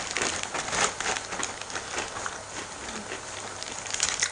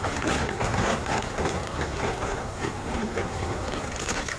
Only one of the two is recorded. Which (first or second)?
first